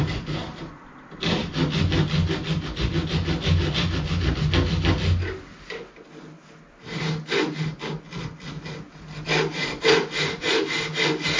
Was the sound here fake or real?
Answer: real